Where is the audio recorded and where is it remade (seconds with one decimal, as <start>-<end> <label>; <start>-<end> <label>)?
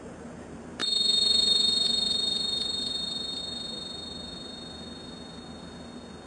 0.0-0.8 recorded; 0.8-3.4 remade; 3.4-6.3 recorded